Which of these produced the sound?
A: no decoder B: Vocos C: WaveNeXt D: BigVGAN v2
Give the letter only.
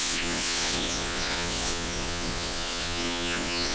B